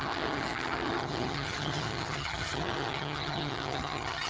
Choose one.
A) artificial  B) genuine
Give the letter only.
A